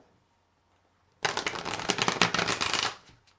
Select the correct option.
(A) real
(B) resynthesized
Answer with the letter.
A